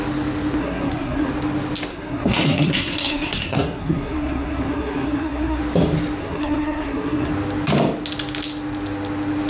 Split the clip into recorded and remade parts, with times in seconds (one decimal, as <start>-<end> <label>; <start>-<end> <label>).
0.0-0.6 recorded; 0.6-1.3 remade; 1.3-1.9 recorded; 1.9-5.6 remade; 5.6-6.2 recorded; 6.2-7.3 remade; 7.3-9.5 recorded